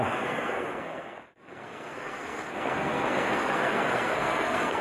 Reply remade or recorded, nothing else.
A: remade